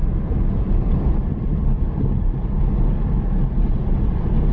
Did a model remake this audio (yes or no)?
no